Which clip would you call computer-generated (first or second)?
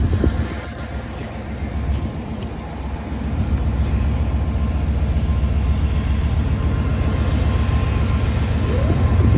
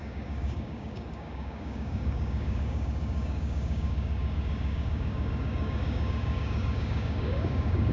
second